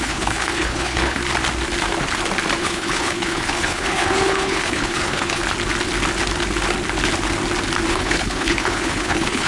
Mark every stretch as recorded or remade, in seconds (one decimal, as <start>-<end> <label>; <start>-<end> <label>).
0.0-1.2 remade; 1.2-2.6 recorded; 2.6-5.4 remade; 5.4-7.9 recorded; 7.9-9.5 remade